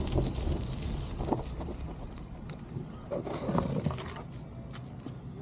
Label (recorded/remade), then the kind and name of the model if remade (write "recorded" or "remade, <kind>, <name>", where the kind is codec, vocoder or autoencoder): recorded